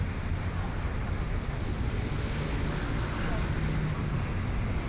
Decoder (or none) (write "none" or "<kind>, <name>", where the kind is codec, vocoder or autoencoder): none